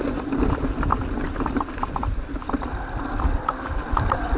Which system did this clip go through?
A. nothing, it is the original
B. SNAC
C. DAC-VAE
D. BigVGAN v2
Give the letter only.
A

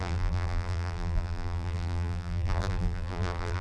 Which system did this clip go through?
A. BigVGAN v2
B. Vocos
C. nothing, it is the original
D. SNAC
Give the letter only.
A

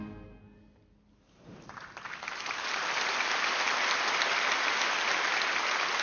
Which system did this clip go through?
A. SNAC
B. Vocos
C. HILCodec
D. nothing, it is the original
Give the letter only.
D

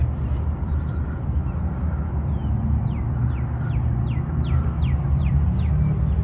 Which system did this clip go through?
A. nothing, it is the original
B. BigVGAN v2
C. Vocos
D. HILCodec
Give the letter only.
A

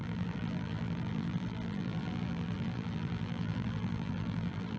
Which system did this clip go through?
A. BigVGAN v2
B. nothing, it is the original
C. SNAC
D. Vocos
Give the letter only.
A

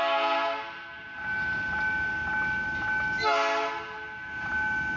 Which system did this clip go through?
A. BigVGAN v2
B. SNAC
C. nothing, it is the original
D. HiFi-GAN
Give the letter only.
C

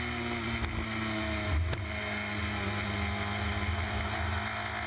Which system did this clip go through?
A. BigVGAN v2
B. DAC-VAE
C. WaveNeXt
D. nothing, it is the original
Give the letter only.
D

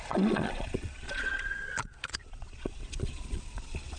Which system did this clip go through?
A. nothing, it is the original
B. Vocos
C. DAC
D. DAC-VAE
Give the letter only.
B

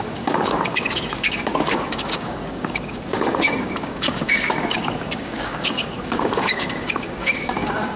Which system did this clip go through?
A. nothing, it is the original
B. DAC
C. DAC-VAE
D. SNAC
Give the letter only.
B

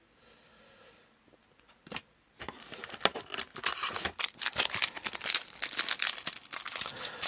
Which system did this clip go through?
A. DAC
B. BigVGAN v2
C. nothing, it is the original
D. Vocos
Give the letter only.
C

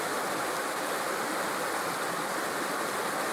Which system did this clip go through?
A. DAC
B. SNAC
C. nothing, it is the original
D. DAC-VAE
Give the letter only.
C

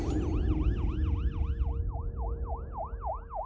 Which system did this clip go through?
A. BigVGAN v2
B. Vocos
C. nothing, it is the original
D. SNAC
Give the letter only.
C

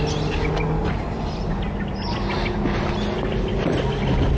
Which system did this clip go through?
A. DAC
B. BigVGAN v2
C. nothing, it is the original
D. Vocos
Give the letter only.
C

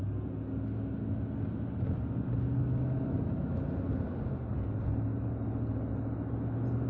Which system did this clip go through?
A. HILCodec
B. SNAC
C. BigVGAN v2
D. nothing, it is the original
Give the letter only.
D